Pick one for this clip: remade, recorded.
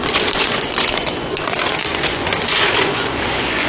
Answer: remade